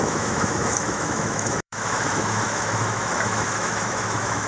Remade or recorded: remade